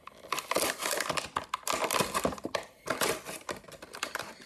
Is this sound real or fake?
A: real